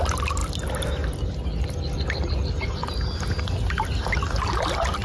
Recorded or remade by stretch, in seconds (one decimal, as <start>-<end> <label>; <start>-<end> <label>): 0.0-5.0 recorded